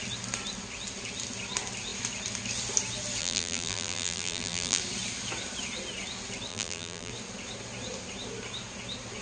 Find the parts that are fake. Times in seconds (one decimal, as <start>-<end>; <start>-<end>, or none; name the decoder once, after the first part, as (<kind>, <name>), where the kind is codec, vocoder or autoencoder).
3.2-4.8 (vocoder, BigVGAN v2); 6.5-7.1